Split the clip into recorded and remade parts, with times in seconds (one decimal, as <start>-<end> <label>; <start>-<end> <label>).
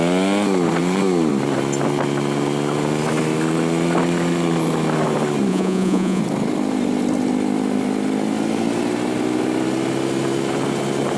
0.0-5.5 recorded; 5.5-6.2 remade; 6.2-11.2 recorded